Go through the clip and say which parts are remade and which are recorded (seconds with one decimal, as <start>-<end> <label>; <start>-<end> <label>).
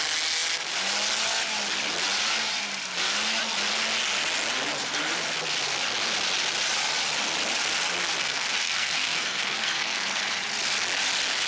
0.0-8.2 recorded; 8.2-10.2 remade; 10.2-11.5 recorded